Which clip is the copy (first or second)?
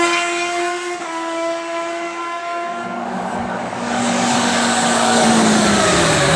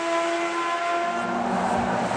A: first